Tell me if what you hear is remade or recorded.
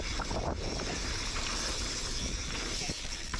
remade